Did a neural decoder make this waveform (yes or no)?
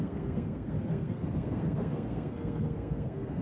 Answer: yes